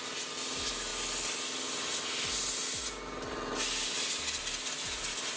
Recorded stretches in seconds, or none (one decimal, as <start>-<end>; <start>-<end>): 0.0-5.4